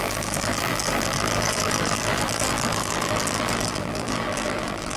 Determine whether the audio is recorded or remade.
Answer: remade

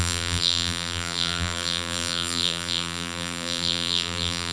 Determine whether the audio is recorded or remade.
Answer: remade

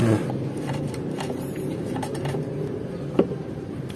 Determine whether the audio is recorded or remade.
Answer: remade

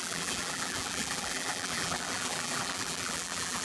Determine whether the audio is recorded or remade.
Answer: remade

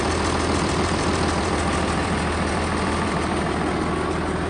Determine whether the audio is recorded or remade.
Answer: remade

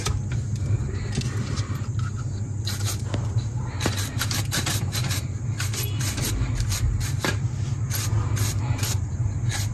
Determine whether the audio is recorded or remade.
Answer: remade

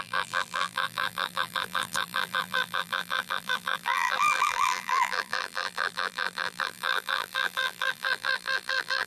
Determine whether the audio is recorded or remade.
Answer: remade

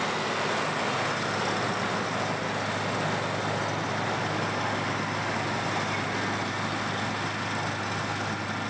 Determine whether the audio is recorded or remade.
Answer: recorded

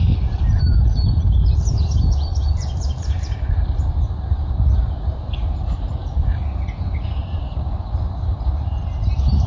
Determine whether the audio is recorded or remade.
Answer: remade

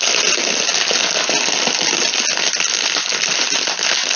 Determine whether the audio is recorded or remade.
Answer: recorded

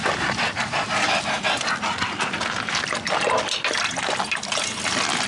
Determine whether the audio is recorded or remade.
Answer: recorded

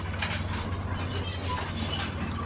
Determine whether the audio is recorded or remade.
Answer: recorded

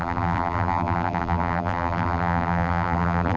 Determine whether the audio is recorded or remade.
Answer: remade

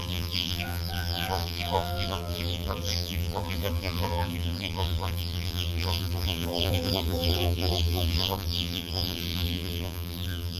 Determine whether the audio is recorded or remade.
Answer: remade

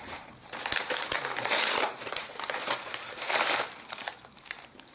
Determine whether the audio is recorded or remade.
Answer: remade